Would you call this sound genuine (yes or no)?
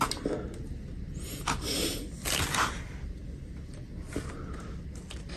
yes